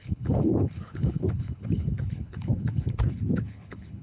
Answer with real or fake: fake